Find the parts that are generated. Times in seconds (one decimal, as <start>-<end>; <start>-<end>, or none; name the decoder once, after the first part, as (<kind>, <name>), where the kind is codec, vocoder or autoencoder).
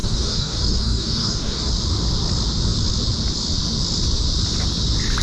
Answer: 0.0-1.7 (codec, DAC)